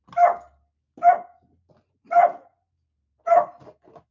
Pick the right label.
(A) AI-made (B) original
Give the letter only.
B